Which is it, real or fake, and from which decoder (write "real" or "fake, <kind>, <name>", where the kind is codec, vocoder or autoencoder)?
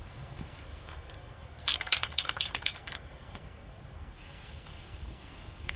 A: fake, codec, SNAC